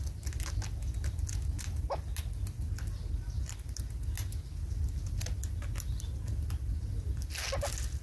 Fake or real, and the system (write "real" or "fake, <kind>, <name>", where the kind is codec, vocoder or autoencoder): real